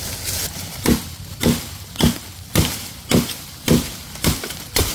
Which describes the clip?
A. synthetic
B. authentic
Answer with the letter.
A